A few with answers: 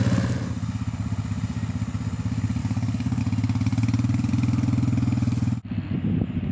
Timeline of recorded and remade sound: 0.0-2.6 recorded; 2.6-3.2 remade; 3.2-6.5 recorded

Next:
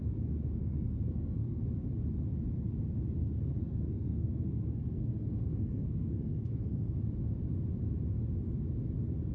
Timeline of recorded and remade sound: 0.0-0.6 recorded; 0.6-1.6 remade; 1.6-3.2 recorded; 3.2-7.0 remade; 7.0-9.3 recorded